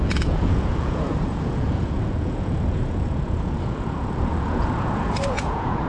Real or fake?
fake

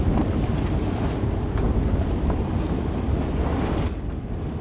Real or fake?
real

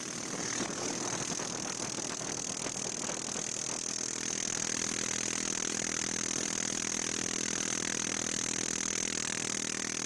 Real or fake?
real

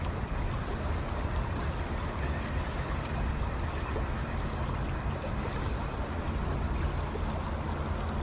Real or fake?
real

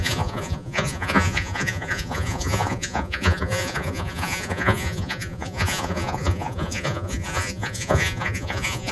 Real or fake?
fake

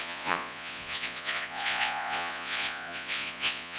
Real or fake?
fake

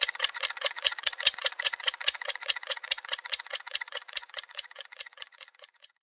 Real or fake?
fake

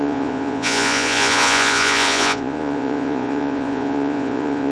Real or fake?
fake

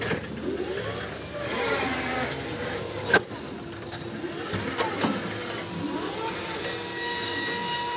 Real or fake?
real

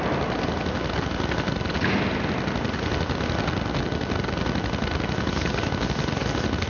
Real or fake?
real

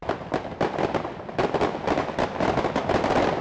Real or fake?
real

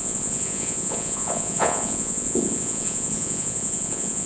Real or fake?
fake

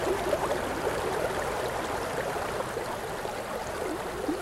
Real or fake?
real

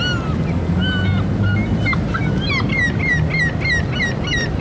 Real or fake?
real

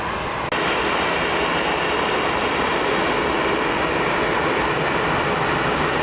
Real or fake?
real